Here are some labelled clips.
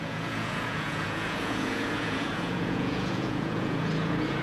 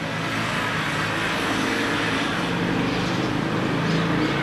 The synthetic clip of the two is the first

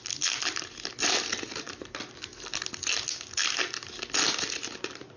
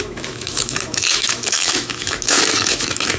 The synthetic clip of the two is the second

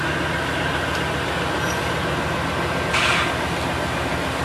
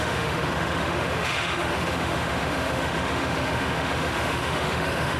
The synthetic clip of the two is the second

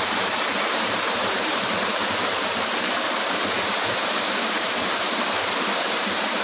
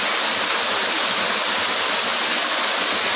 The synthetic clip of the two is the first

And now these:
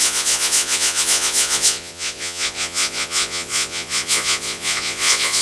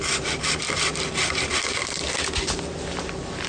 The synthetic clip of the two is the first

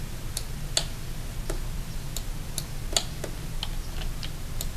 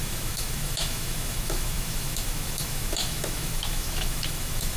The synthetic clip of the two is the second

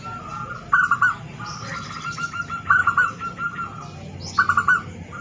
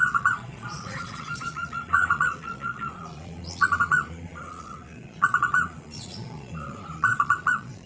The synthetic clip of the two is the second